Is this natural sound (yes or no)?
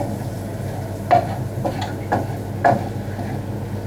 yes